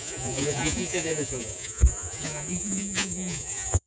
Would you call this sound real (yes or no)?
no